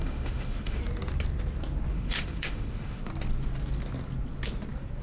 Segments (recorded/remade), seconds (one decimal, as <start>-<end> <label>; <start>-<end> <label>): 0.0-0.8 remade; 0.8-1.9 recorded; 1.9-3.1 remade; 3.1-5.0 recorded